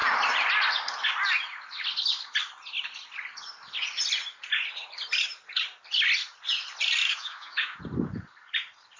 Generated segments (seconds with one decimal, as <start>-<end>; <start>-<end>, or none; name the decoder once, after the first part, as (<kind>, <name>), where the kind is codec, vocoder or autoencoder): 7.0-7.8 (autoencoder, DAC-VAE)